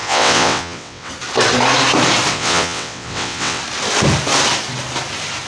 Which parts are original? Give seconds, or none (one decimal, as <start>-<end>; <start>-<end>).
1.1-2.3; 3.6-5.5